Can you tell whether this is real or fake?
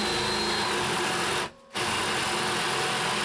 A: real